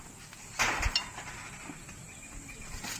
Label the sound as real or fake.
real